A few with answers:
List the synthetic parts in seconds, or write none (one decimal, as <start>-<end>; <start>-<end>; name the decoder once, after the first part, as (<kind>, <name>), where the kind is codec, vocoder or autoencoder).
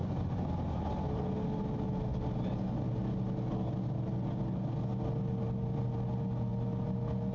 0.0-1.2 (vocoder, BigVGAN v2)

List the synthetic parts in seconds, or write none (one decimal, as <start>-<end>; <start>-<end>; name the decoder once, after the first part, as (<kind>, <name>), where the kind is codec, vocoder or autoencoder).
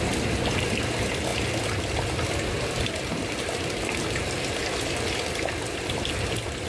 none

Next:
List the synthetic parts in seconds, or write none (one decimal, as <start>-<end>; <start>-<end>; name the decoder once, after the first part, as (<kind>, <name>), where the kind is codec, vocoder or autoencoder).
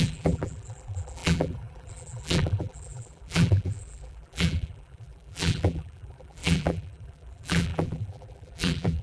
0.0-9.0 (vocoder, BigVGAN v2)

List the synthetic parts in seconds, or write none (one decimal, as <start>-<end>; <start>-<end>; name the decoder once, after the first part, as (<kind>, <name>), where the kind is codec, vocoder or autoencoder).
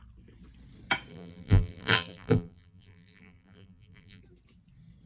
1.1-4.2 (vocoder, BigVGAN v2)